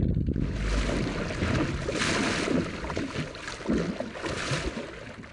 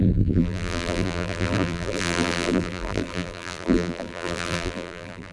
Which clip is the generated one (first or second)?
second